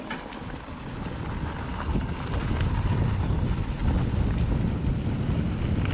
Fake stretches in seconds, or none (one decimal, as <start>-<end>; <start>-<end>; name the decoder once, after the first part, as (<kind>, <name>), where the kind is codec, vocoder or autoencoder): none